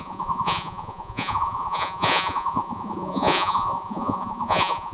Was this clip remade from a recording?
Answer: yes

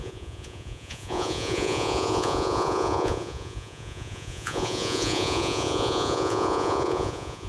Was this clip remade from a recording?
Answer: yes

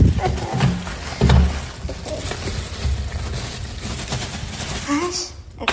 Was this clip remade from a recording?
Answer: no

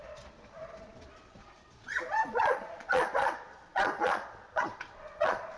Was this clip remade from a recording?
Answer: yes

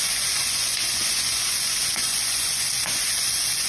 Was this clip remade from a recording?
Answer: yes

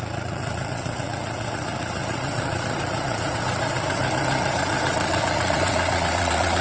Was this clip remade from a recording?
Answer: yes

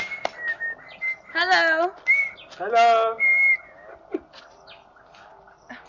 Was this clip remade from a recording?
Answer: no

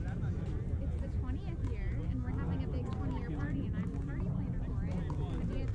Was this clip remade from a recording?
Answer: no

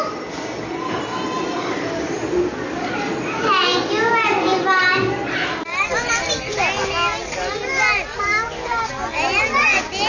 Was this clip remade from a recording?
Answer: no